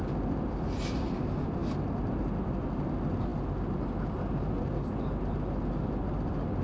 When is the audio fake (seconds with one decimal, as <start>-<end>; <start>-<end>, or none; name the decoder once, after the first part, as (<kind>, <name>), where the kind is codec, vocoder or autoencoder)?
none